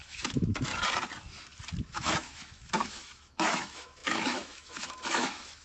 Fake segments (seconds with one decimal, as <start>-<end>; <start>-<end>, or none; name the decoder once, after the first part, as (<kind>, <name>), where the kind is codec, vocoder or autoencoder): 0.0-0.7 (autoencoder, DAC-VAE); 1.8-5.6